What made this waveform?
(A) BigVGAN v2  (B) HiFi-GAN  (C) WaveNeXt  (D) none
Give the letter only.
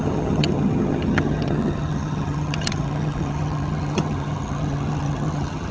B